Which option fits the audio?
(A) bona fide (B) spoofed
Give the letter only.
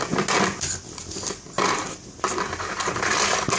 A